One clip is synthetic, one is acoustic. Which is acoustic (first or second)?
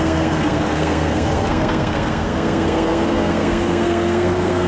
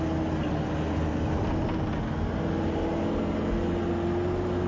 second